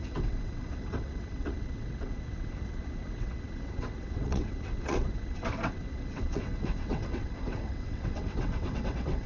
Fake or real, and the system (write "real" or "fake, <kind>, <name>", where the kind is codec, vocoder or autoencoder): fake, vocoder, WaveNeXt